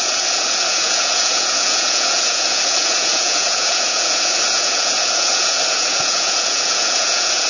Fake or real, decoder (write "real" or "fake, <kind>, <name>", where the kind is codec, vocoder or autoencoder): fake, vocoder, Vocos